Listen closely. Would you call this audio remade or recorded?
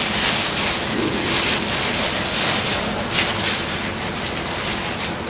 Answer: recorded